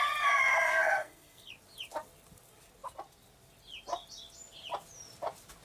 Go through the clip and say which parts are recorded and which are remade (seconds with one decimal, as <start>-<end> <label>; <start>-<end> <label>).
0.0-0.7 recorded; 0.7-1.5 remade; 1.5-5.6 recorded